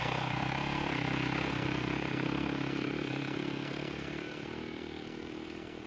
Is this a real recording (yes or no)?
no